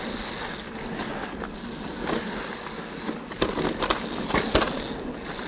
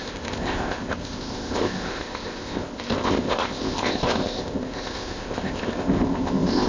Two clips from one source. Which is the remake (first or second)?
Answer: second